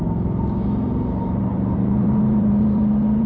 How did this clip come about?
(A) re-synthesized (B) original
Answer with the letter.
A